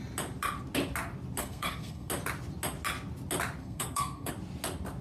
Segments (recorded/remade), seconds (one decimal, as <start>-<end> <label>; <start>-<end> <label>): 0.0-1.4 recorded; 1.4-2.1 remade; 2.1-3.6 recorded; 3.6-4.3 remade; 4.3-5.0 recorded

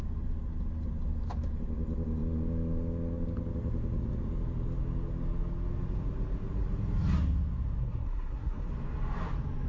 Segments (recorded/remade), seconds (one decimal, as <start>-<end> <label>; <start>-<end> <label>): 0.0-7.8 recorded; 7.8-8.7 remade; 8.7-9.7 recorded